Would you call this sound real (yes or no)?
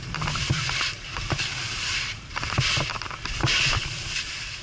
yes